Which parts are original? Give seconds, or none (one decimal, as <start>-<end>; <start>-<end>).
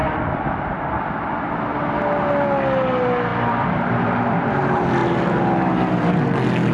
1.0-3.3; 4.5-6.7